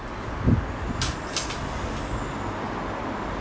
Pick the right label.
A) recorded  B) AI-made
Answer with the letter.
A